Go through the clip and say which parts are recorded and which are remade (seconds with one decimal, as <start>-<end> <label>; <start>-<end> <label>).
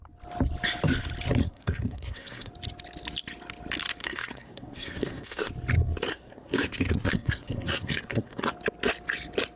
0.0-1.4 recorded; 1.4-2.5 remade; 2.5-4.0 recorded; 4.0-5.5 remade; 5.5-6.1 recorded; 6.1-8.5 remade; 8.5-9.6 recorded